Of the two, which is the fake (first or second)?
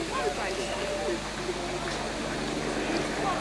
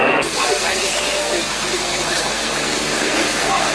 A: second